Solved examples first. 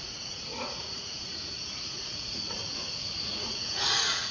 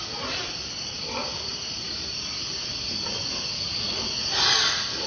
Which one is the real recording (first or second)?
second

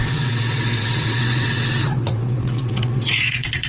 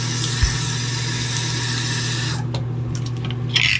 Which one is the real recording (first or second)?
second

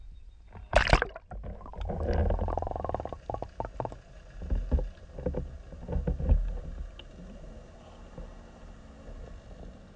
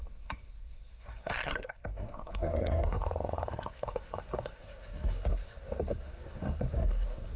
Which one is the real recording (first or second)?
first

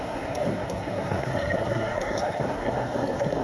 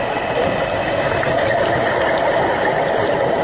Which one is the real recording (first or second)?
second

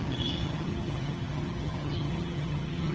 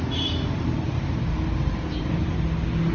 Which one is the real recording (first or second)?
second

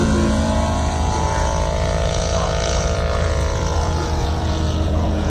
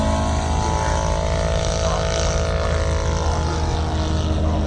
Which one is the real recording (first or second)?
second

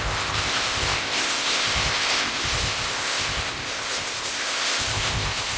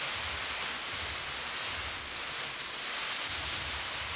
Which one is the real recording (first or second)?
second